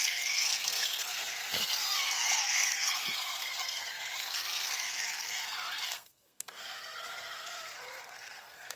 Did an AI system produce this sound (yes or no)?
yes